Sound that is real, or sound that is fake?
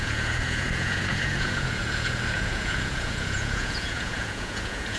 fake